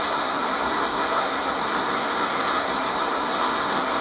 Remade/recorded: remade